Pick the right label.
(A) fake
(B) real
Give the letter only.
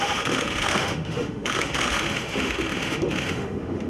A